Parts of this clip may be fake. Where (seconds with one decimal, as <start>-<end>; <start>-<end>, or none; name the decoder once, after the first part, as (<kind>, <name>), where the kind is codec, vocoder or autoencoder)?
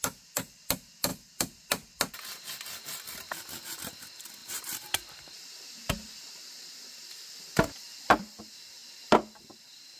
4.4-8.4 (vocoder, BigVGAN v2)